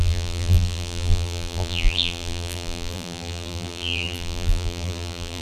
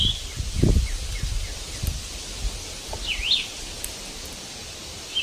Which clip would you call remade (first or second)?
first